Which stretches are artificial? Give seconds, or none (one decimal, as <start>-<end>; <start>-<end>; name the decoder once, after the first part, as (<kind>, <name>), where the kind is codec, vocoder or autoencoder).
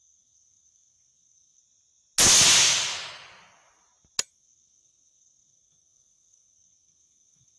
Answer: 0.0-1.6 (codec, SNAC); 4.3-7.6